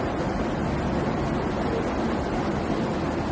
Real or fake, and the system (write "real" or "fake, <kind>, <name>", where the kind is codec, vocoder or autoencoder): real